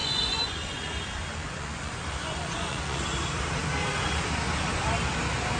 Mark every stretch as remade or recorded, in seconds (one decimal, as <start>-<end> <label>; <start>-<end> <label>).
0.0-3.0 remade; 3.0-5.6 recorded